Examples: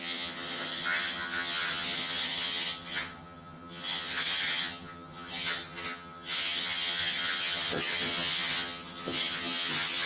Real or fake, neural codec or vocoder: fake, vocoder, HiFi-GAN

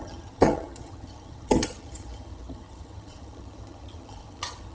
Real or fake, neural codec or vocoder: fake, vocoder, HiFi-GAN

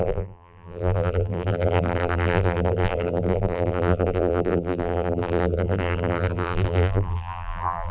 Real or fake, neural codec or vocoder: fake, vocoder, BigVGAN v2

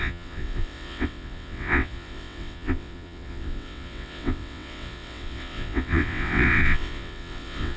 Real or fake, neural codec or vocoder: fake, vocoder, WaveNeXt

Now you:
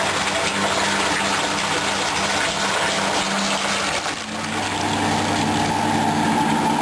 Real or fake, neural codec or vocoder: real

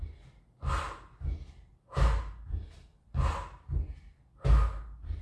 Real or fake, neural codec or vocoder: real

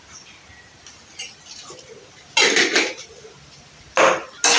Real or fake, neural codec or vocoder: real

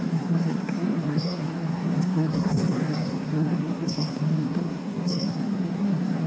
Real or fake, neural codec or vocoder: fake, codec, SNAC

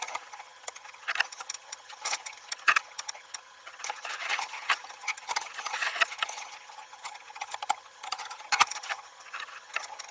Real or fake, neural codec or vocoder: fake, vocoder, HiFi-GAN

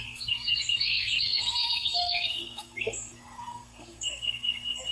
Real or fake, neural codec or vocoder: fake, codec, SNAC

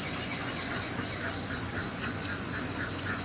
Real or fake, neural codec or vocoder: fake, vocoder, Vocos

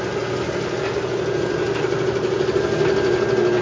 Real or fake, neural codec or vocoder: real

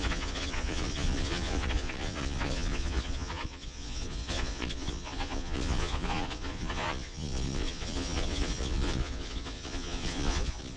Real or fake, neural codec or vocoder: fake, vocoder, Vocos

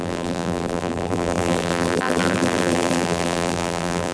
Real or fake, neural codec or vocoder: fake, vocoder, BigVGAN v2